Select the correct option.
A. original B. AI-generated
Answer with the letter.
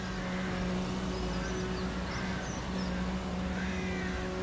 A